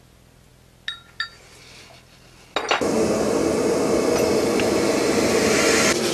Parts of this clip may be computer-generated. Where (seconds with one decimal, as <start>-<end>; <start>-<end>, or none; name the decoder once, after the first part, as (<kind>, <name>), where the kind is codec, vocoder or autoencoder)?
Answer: none